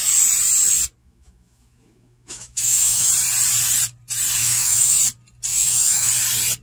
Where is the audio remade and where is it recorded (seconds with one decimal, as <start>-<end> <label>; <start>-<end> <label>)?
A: 0.0-1.0 recorded; 1.0-3.1 remade; 3.1-4.4 recorded; 4.4-5.0 remade; 5.0-5.5 recorded; 5.5-6.1 remade; 6.1-6.6 recorded